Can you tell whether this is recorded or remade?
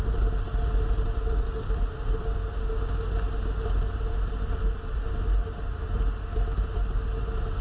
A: recorded